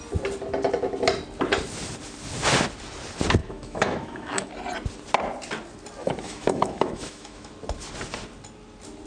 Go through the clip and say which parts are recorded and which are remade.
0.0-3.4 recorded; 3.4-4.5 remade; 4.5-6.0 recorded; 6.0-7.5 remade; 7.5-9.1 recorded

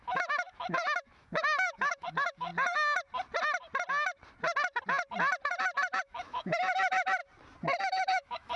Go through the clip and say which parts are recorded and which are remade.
0.0-2.5 remade; 2.5-6.0 recorded; 6.0-7.2 remade; 7.2-7.8 recorded; 7.8-8.6 remade

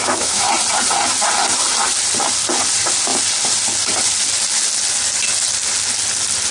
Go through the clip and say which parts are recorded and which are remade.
0.0-0.5 remade; 0.5-6.5 recorded

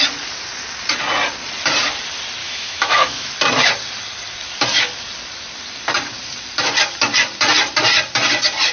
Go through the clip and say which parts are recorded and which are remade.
0.0-2.4 recorded; 2.4-3.3 remade; 3.3-8.7 recorded

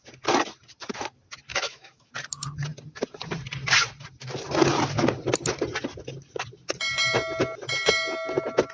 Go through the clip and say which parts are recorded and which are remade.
0.0-1.5 recorded; 1.5-2.1 remade; 2.1-8.7 recorded

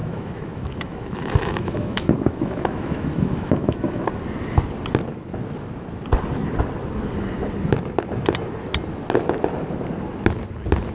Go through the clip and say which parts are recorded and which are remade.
0.0-4.1 remade; 4.1-10.9 recorded

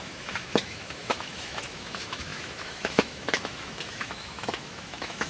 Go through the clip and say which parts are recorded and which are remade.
0.0-5.3 remade